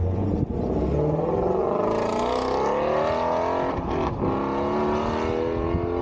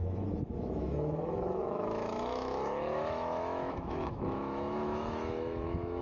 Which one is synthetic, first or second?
second